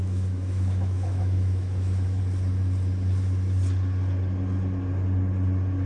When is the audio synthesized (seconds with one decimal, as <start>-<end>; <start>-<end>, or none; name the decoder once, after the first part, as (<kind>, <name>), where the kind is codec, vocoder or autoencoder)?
0.0-2.2 (autoencoder, DAC-VAE)